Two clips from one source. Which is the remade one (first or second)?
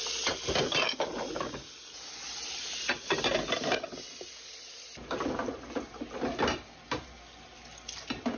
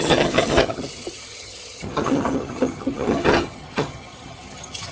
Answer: second